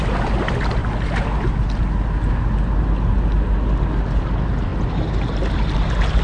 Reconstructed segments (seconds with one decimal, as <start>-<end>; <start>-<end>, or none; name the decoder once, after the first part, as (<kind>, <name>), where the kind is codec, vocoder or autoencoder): none